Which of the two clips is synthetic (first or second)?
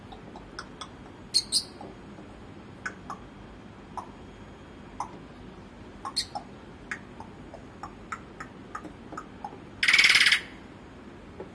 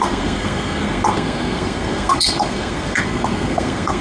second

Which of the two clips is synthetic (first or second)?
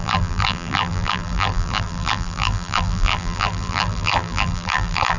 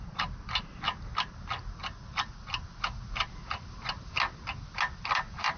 first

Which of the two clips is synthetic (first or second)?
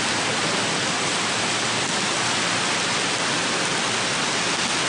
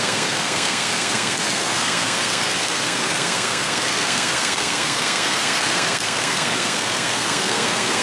second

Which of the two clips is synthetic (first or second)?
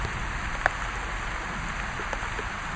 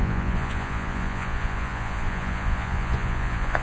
second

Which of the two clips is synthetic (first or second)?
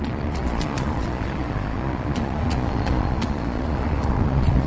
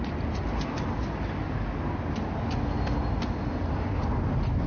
first